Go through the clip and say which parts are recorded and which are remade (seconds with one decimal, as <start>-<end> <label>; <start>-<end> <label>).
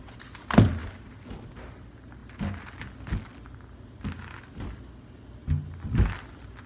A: 0.0-6.7 recorded